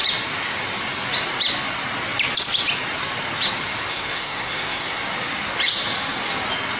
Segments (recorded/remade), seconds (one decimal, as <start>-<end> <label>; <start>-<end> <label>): 0.0-3.9 recorded; 3.9-5.0 remade; 5.0-6.8 recorded